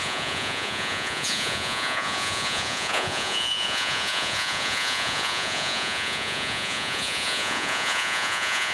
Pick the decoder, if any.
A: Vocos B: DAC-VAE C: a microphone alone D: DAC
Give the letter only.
A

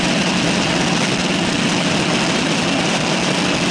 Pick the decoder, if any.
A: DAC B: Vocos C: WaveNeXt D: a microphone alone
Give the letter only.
D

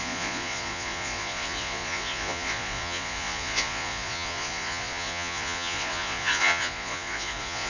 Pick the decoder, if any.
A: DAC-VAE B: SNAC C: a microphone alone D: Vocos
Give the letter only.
D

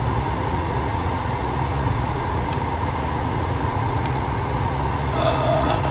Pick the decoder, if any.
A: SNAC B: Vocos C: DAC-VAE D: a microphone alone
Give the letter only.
B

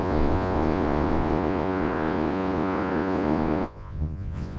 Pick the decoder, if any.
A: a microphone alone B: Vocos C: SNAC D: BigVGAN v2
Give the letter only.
B